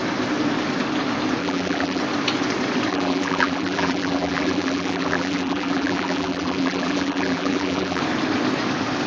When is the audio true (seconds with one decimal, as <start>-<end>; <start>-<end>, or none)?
0.0-1.4; 2.0-2.9; 8.0-9.1